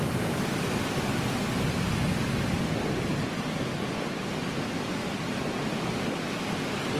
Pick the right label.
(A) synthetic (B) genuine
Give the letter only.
B